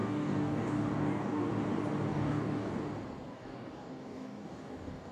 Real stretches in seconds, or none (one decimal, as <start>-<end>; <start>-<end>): 1.5-2.1; 2.7-3.3